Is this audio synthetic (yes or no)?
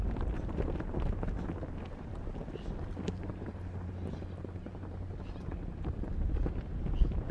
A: no